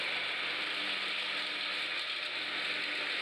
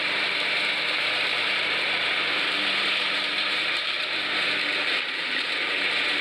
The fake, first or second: second